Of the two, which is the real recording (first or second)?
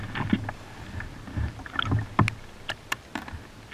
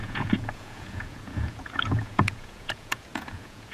first